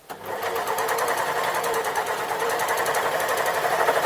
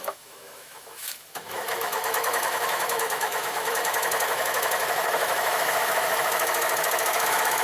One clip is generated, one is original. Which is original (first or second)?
first